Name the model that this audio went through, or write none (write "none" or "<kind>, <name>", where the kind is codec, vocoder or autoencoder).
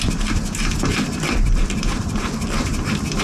vocoder, BigVGAN v2